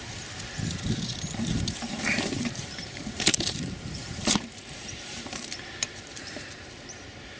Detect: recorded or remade remade